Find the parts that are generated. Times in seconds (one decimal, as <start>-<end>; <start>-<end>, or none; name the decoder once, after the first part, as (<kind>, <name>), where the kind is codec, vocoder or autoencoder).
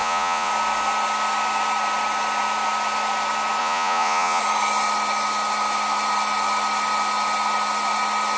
0.0-0.5 (vocoder, Vocos); 3.6-4.4